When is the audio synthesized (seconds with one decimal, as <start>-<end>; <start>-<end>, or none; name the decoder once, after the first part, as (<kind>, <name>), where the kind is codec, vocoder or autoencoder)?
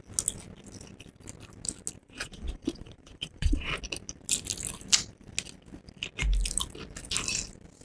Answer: 2.0-3.7 (vocoder, Vocos)